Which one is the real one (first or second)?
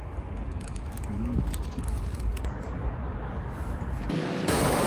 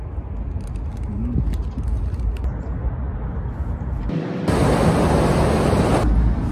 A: second